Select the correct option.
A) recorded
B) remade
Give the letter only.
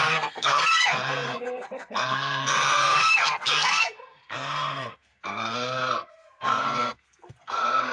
B